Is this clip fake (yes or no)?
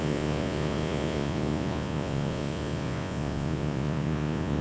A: yes